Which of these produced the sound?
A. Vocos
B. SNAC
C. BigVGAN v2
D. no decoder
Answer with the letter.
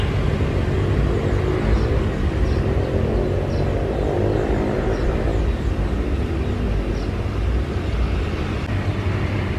D